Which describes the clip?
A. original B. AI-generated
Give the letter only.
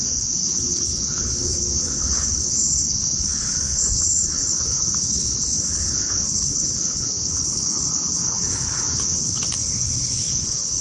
B